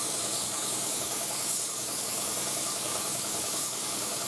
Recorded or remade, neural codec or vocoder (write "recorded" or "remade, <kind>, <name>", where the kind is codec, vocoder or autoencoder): remade, codec, DAC